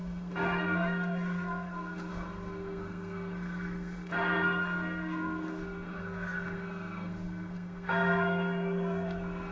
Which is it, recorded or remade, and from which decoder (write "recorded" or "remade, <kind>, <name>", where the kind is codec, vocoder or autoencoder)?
remade, codec, SNAC